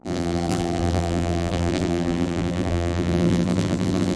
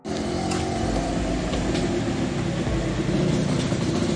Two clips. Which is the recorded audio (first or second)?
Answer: second